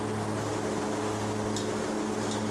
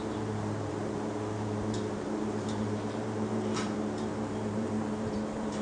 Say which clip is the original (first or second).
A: first